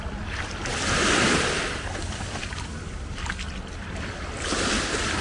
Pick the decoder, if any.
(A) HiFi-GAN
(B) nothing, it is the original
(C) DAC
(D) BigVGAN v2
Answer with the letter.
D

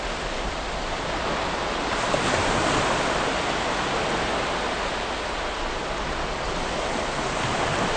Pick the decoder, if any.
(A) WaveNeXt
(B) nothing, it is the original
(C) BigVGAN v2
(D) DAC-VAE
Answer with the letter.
B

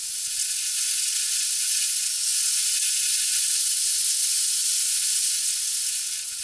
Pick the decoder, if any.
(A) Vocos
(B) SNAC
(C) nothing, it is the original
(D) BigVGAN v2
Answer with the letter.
A